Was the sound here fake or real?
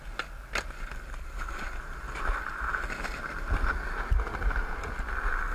real